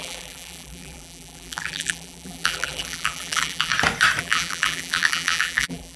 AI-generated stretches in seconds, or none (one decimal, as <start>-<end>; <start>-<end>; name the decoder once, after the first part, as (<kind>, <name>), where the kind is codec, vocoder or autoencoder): 0.0-3.7 (vocoder, BigVGAN v2); 4.2-6.0

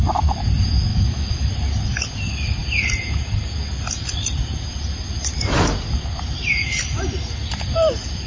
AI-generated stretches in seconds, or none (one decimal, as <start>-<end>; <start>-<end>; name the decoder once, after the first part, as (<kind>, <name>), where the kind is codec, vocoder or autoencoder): 0.9-1.5 (autoencoder, DAC-VAE)

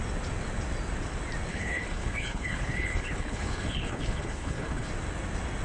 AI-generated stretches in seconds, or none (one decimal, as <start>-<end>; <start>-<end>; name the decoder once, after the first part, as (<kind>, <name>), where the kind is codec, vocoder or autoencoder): 1.5-4.9 (codec, HILCodec)

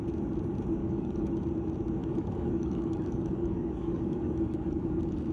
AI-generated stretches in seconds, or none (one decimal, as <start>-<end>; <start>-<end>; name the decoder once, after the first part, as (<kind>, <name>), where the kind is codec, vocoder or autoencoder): 0.8-1.3 (codec, DAC); 2.0-5.3

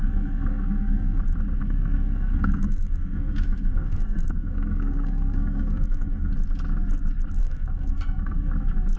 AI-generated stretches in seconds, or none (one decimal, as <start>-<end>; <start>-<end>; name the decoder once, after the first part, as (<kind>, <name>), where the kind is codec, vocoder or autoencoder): 0.0-1.2 (codec, SNAC); 1.6-6.3; 7.4-8.5

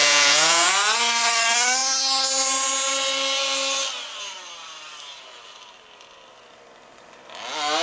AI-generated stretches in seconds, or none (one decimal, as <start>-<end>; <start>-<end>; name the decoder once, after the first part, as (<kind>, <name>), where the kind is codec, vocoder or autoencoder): 0.0-0.7 (vocoder, Vocos)

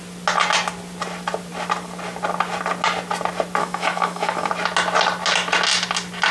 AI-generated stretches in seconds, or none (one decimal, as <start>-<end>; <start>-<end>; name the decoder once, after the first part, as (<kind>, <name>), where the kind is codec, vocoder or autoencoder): 3.6-4.5 (autoencoder, DAC-VAE)

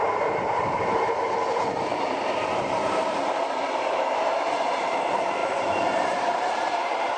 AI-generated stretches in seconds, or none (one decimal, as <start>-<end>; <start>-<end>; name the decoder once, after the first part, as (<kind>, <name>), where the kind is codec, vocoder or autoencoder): 0.0-7.2 (vocoder, BigVGAN v2)